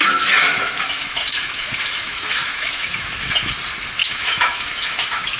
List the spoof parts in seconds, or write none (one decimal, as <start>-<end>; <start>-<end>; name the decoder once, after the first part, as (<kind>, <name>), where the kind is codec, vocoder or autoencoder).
0.4-3.3 (autoencoder, DAC-VAE); 4.0-5.4